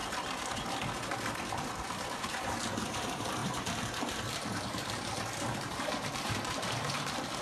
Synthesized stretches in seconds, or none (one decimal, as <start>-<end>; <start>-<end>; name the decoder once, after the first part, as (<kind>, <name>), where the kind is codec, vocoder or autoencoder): 1.6-7.4 (vocoder, BigVGAN v2)